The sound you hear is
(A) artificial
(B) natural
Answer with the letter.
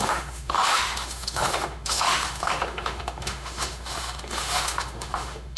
A